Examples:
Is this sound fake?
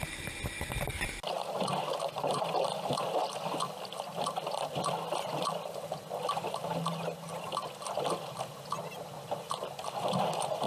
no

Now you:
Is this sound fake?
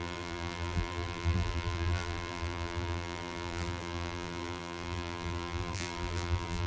yes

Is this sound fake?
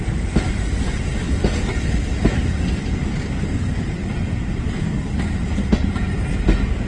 no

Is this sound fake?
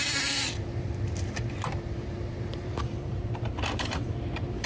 yes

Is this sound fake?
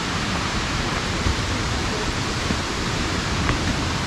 yes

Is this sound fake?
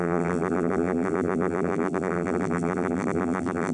yes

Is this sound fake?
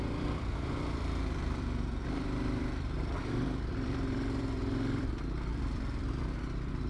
yes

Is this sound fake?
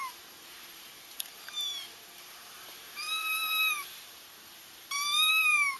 yes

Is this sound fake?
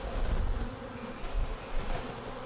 no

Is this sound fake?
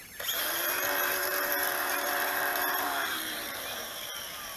yes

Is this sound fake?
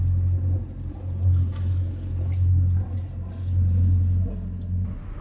no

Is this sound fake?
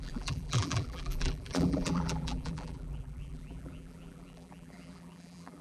yes